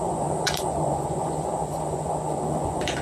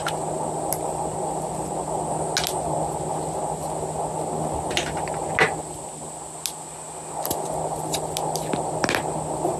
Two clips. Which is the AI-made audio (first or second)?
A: first